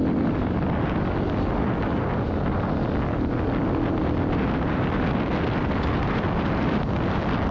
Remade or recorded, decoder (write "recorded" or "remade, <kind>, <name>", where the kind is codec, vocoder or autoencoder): recorded